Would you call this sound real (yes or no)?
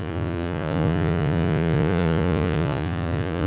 no